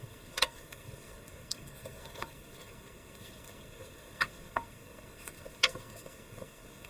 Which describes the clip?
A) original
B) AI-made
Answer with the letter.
B